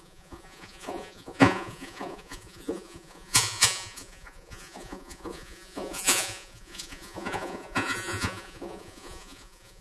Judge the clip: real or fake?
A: fake